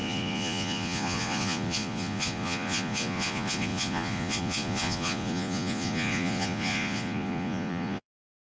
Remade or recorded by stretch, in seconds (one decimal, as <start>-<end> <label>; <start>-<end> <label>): 0.0-8.5 remade